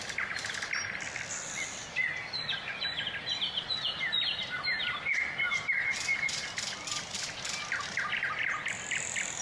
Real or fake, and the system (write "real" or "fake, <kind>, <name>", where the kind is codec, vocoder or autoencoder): fake, vocoder, BigVGAN v2